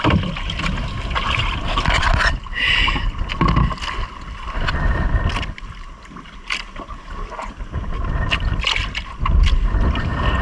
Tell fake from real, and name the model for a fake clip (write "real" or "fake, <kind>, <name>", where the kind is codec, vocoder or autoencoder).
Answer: real